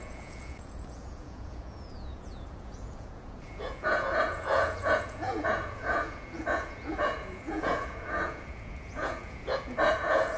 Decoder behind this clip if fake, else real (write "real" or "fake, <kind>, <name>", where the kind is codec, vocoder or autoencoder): fake, vocoder, Vocos